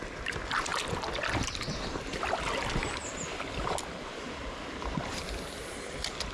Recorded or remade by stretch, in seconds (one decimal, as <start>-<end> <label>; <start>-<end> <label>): 0.0-6.3 recorded